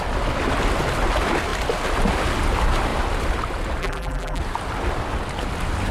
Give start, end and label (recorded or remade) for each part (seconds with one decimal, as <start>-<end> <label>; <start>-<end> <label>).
0.0-3.8 recorded; 3.8-4.4 remade; 4.4-5.9 recorded